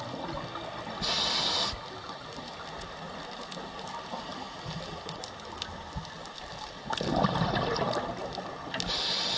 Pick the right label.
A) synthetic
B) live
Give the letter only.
B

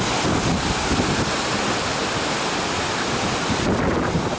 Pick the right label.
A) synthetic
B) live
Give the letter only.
B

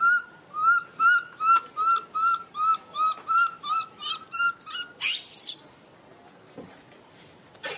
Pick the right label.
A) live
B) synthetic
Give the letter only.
A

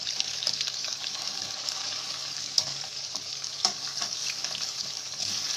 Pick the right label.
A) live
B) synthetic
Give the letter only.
B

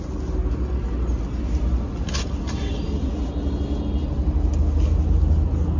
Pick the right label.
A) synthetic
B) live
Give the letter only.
B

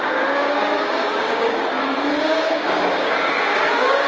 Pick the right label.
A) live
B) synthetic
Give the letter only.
B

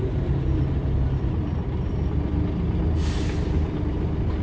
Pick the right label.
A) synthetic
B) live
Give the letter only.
B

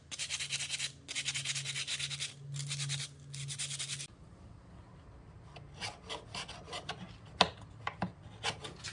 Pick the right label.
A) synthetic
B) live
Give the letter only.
B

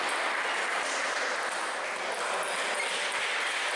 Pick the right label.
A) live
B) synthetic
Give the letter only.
A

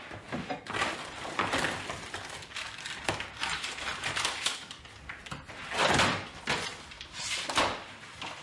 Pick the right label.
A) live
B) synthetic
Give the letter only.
A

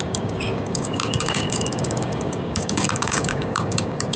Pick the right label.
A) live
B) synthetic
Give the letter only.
B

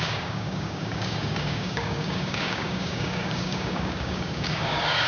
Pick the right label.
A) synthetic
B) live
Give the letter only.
A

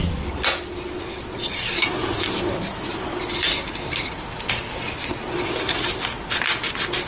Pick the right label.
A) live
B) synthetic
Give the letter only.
A